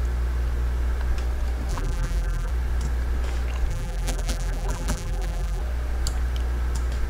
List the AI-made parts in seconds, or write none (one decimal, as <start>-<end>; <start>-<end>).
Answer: 1.7-2.5; 3.7-5.6